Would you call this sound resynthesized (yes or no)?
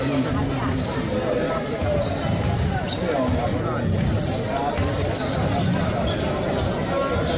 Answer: no